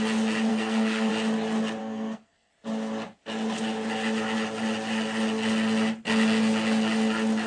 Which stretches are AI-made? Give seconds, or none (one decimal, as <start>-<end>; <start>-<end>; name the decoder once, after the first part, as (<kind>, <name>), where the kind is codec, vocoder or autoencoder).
0.5-1.1 (codec, SNAC); 1.8-2.5